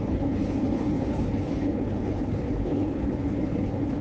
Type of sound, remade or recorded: remade